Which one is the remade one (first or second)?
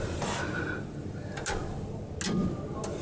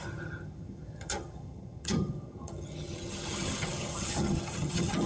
second